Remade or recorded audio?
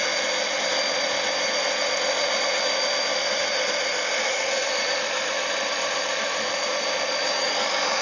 recorded